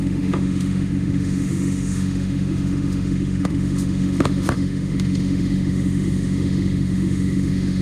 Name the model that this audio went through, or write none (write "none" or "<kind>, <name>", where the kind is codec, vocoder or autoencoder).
autoencoder, DAC-VAE